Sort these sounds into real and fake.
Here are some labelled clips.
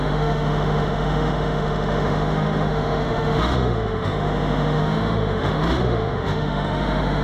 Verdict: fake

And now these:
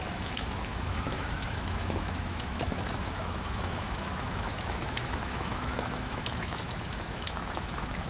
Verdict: fake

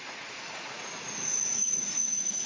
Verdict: fake